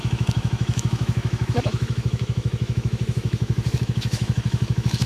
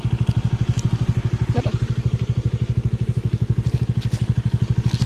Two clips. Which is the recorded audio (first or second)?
second